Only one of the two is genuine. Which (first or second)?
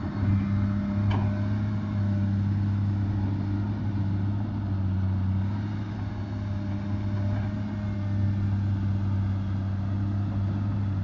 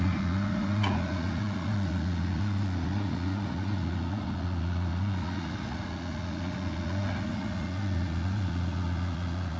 first